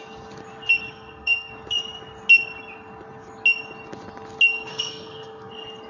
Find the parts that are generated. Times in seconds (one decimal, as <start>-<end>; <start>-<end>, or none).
0.9-1.5; 4.7-5.5